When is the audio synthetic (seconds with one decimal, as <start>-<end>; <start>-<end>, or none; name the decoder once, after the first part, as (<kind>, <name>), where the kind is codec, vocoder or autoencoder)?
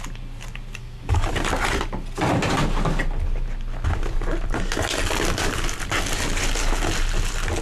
0.8-1.3 (codec, DAC)